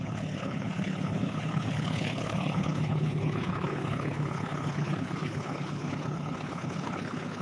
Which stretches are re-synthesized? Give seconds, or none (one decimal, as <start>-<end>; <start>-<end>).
0.0-7.4